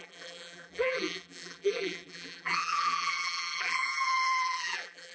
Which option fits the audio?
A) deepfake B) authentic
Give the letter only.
A